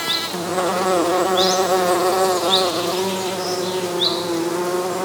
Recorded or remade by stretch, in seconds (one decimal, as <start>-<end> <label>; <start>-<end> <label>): 0.0-0.5 recorded; 0.5-2.9 remade; 2.9-5.0 recorded